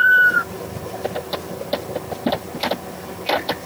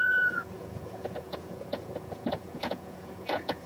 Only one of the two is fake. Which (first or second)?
second